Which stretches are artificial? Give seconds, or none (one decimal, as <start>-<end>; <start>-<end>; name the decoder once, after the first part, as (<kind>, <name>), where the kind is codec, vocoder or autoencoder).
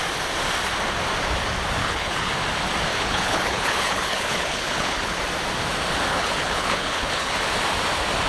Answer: 1.8-2.3 (codec, HILCodec); 2.9-5.2; 6.1-7.4